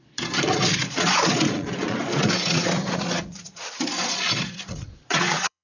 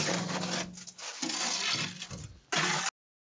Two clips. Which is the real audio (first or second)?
second